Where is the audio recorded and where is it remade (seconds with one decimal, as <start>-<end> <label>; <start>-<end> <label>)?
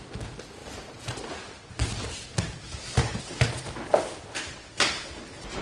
0.0-5.6 recorded